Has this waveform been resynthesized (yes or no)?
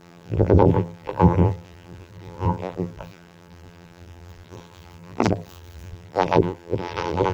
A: yes